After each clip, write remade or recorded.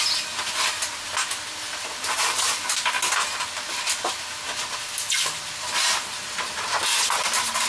recorded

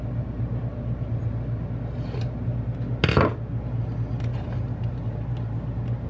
recorded